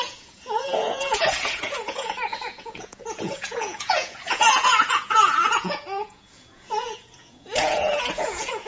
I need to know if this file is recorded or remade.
remade